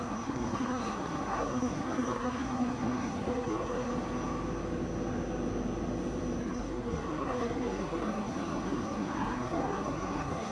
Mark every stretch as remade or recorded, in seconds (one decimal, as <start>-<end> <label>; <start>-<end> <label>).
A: 0.0-3.9 remade; 3.9-6.4 recorded; 6.4-10.5 remade

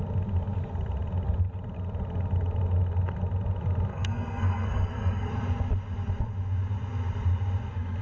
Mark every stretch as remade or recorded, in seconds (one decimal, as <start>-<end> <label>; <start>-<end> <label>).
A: 0.0-3.9 recorded; 3.9-5.3 remade; 5.3-8.0 recorded

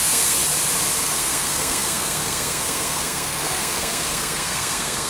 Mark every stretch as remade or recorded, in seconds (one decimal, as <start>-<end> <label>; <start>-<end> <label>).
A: 0.0-0.4 remade; 0.4-1.0 recorded; 1.0-5.1 remade

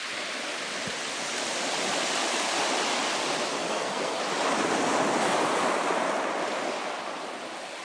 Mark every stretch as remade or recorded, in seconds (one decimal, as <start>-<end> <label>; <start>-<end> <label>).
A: 0.0-3.6 recorded; 3.6-4.2 remade; 4.2-7.8 recorded

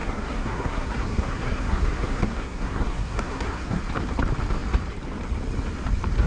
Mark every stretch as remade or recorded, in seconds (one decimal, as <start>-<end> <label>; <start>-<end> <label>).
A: 0.0-3.8 remade; 3.8-6.3 recorded

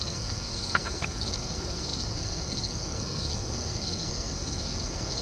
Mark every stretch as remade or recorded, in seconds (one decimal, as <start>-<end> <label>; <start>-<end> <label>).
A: 0.0-5.2 remade

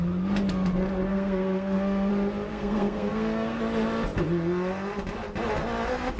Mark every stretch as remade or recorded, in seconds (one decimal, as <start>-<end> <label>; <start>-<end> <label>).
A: 0.0-1.1 recorded; 1.1-2.1 remade; 2.1-2.5 recorded; 2.5-3.6 remade; 3.6-6.2 recorded